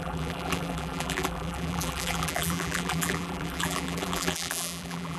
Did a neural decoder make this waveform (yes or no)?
yes